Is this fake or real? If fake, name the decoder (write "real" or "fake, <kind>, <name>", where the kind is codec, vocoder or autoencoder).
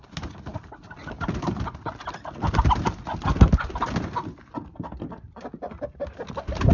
real